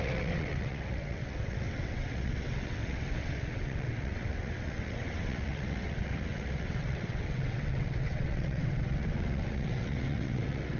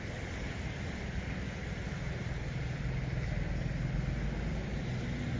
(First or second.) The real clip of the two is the second